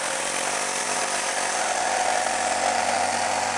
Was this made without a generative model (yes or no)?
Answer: yes